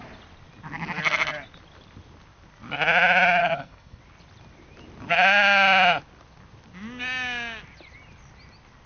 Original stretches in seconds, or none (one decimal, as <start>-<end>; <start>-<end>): 0.0-3.4; 4.0-8.9